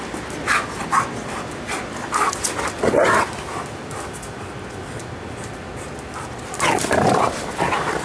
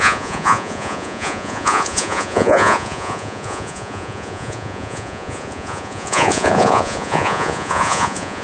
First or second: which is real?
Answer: first